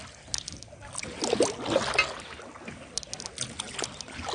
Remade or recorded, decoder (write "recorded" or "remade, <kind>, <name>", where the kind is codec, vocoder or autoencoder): recorded